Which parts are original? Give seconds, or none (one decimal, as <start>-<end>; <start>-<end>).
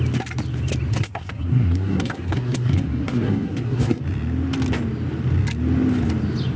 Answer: 0.0-0.9; 4.0-6.6